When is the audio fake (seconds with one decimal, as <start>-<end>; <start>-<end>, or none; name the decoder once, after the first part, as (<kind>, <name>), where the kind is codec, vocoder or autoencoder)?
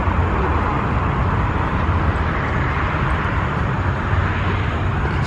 none